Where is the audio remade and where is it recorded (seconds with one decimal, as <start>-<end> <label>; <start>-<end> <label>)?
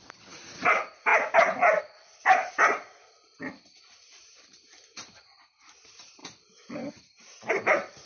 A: 0.0-1.1 remade; 1.1-1.8 recorded; 1.8-3.3 remade; 3.3-4.1 recorded; 4.1-6.2 remade; 6.2-6.9 recorded; 6.9-8.1 remade